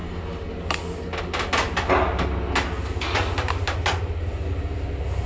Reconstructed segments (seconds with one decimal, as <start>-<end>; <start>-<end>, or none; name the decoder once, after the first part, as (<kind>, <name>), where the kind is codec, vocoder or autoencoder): none

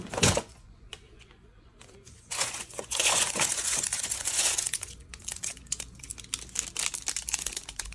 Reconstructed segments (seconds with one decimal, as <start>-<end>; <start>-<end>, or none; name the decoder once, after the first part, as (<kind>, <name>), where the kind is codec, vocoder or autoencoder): 0.0-6.1 (vocoder, Vocos); 7.3-7.9

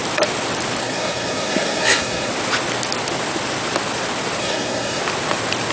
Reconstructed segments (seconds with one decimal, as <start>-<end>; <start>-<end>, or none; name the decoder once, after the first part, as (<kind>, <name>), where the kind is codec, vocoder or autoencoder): 0.8-2.3 (codec, SNAC); 4.4-5.0

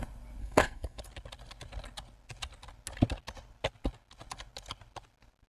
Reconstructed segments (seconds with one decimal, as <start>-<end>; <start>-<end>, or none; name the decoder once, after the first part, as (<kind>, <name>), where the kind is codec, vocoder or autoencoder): 0.4-1.0 (codec, SNAC)

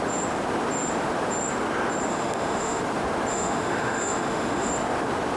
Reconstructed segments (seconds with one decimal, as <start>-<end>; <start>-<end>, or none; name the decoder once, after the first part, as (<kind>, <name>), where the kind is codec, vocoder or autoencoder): 2.1-2.8 (autoencoder, DAC-VAE); 3.3-4.7